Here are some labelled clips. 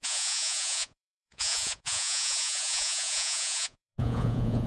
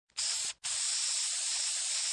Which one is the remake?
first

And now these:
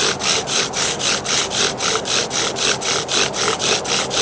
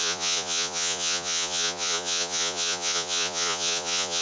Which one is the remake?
second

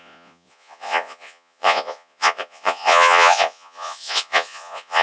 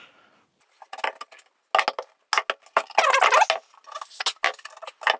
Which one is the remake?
first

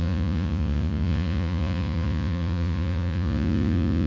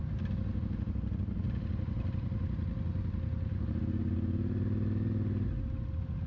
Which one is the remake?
first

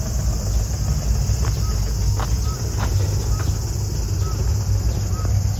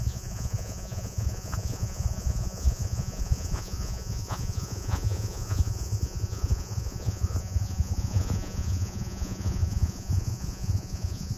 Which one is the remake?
second